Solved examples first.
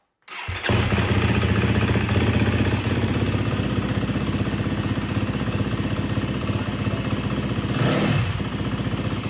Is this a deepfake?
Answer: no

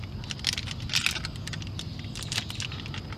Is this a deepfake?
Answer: no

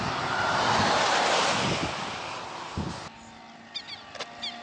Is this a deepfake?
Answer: no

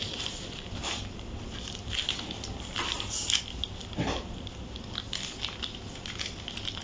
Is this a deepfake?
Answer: no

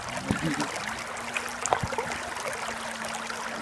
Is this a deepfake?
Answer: no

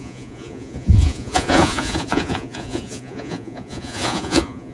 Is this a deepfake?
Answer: yes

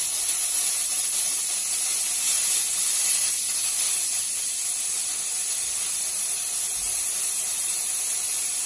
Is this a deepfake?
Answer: yes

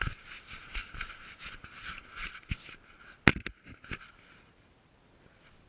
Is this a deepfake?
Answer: no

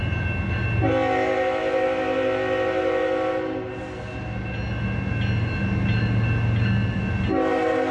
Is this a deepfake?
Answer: no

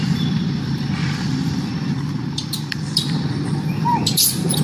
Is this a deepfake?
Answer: yes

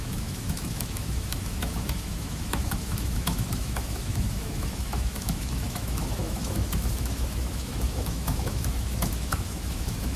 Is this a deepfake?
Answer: yes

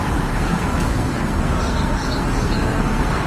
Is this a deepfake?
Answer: yes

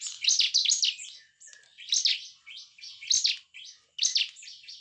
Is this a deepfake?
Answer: no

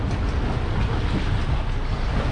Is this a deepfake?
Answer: no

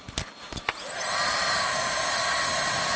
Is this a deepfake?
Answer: no